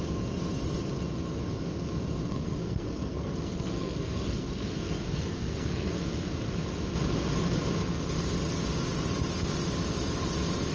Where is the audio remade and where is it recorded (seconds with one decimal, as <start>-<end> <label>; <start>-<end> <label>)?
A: 0.0-2.2 recorded; 2.2-6.0 remade; 6.0-10.7 recorded